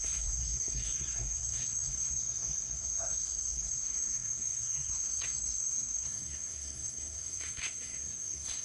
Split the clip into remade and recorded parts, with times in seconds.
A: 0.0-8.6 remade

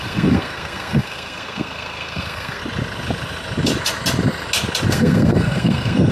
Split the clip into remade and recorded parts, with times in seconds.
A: 0.0-2.6 remade; 2.6-4.9 recorded; 4.9-6.1 remade

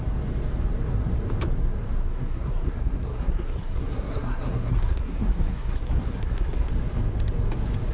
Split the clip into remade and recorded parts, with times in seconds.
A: 0.0-2.0 recorded; 2.0-6.7 remade; 6.7-7.9 recorded